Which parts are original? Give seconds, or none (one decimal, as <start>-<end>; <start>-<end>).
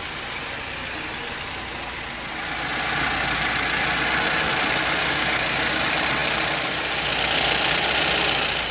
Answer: 0.0-5.0; 5.8-8.7